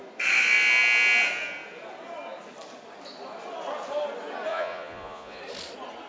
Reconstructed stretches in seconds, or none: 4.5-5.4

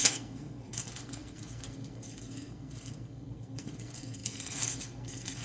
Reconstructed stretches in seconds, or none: 0.0-5.4

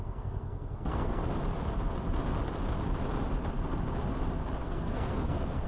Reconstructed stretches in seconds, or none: 0.0-1.2; 4.6-5.7

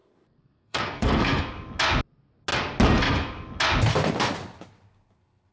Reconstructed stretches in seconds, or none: 0.0-1.4